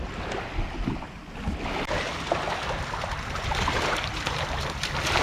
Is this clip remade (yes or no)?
no